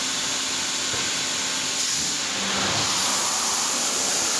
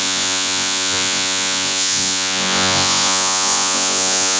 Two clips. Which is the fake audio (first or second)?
second